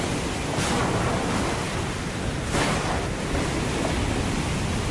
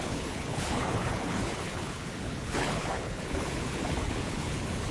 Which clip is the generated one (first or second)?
second